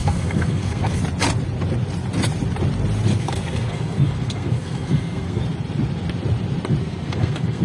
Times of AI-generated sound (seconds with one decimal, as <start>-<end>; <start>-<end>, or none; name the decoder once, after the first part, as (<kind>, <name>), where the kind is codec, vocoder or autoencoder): 0.0-1.0 (codec, SNAC); 3.1-5.4; 6.8-7.6